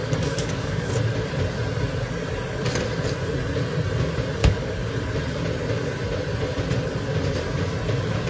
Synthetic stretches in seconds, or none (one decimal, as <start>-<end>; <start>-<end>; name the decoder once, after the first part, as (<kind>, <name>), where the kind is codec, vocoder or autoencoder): 0.0-0.9 (codec, DAC); 4.4-4.9